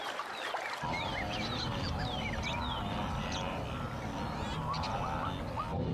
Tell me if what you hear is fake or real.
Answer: real